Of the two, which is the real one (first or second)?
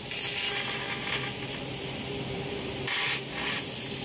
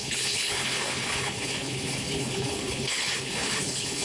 first